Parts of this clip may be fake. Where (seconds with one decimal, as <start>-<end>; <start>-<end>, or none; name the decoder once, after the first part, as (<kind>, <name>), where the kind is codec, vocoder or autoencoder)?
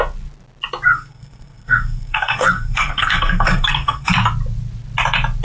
0.9-4.1 (codec, SNAC)